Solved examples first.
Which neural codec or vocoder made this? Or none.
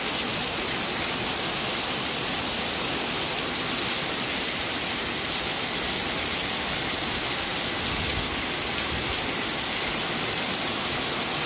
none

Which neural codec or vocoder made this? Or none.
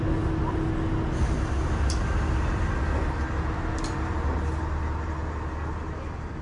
none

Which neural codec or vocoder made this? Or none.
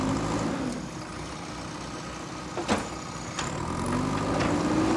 none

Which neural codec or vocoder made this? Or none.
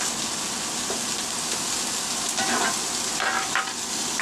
none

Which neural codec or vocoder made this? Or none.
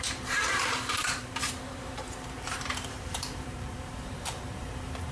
vocoder, BigVGAN v2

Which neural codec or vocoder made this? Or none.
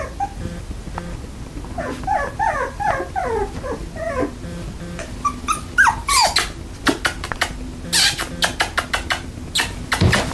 none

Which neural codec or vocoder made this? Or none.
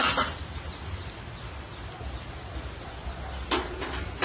vocoder, BigVGAN v2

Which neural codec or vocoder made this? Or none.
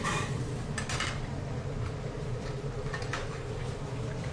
vocoder, BigVGAN v2